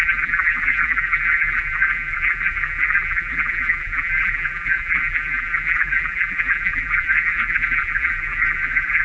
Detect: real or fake fake